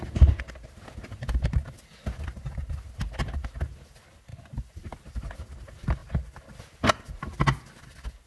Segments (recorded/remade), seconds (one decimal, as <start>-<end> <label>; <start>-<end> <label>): 0.0-8.3 recorded